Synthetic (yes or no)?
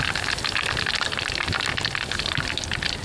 no